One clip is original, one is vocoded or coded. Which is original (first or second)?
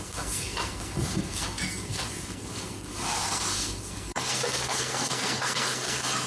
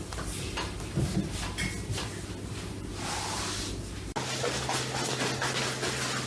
second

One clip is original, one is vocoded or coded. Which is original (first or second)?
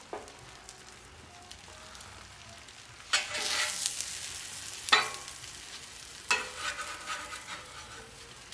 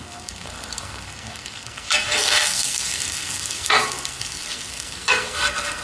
first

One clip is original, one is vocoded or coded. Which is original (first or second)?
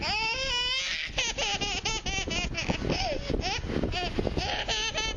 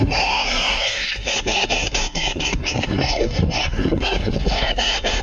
first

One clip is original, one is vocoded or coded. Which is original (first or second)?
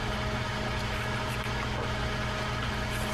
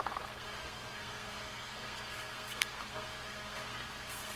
first